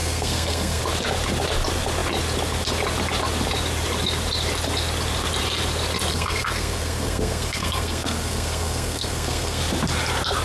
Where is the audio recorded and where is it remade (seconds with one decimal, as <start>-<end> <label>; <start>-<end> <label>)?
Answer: 0.0-0.8 remade; 0.8-6.1 recorded; 6.1-9.6 remade; 9.6-10.4 recorded